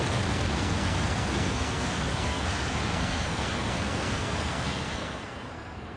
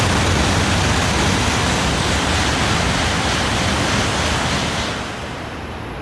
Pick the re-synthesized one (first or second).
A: first